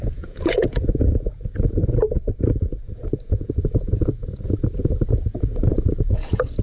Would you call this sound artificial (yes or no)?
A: yes